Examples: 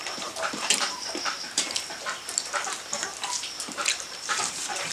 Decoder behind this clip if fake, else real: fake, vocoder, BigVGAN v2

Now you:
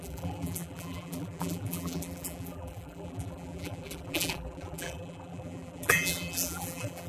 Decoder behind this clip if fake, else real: fake, vocoder, BigVGAN v2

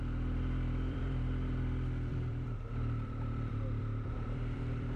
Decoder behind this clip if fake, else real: fake, vocoder, BigVGAN v2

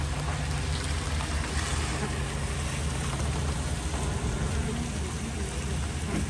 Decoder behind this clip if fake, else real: real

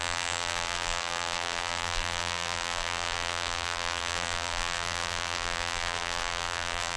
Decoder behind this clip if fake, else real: fake, vocoder, BigVGAN v2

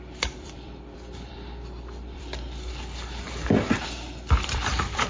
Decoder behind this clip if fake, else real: fake, vocoder, BigVGAN v2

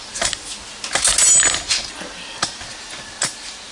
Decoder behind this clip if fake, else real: real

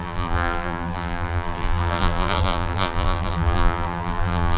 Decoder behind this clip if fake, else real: fake, vocoder, BigVGAN v2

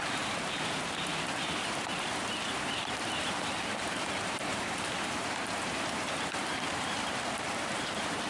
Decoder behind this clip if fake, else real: fake, vocoder, BigVGAN v2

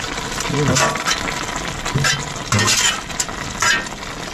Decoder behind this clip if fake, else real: real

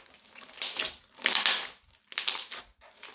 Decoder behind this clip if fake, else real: real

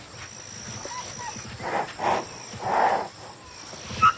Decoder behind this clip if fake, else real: real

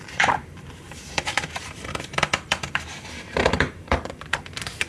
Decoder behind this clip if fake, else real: fake, vocoder, BigVGAN v2